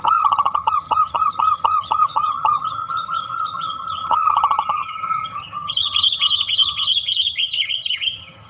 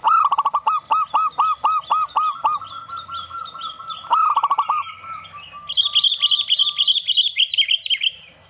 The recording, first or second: second